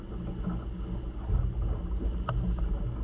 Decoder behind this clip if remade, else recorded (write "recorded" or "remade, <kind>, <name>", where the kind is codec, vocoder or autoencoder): recorded